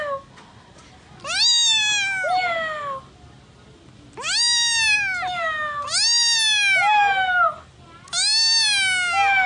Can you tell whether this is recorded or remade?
recorded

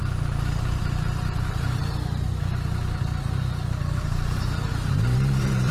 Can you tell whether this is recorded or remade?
remade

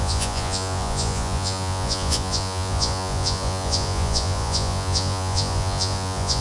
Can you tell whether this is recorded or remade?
remade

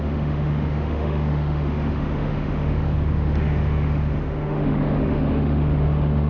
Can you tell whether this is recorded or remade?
remade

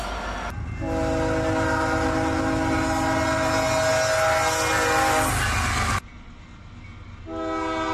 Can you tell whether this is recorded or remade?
recorded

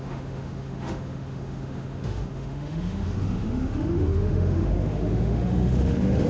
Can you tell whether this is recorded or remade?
remade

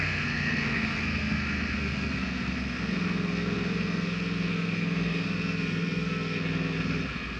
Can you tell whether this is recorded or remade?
remade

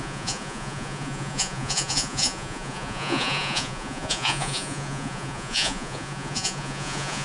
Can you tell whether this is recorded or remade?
remade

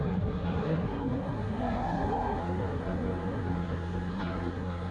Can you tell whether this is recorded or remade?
remade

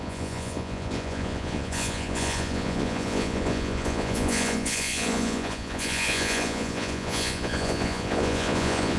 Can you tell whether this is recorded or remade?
remade